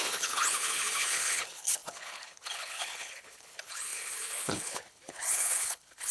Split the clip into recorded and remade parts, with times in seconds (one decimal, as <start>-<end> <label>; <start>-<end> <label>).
0.0-6.1 remade